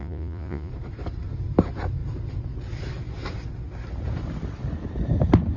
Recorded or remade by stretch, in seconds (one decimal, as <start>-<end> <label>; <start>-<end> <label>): 0.0-0.7 remade; 0.7-5.6 recorded